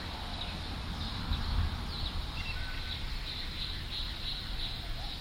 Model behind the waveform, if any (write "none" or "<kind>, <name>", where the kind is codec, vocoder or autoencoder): none